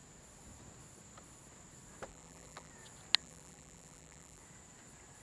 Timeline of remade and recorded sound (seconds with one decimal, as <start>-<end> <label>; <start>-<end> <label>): 0.0-2.1 recorded; 2.1-2.7 remade; 2.7-3.2 recorded; 3.2-4.4 remade; 4.4-5.2 recorded